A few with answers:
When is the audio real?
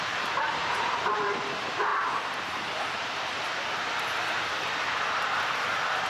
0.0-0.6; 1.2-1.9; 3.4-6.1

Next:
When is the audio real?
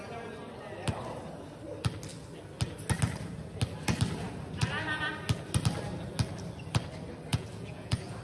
0.0-7.3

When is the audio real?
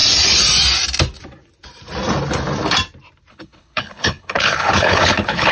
0.0-3.3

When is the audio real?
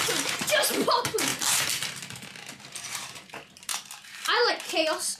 1.3-2.6; 3.7-4.5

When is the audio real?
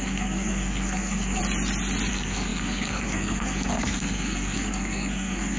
1.4-2.1